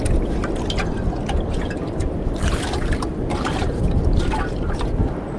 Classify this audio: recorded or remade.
recorded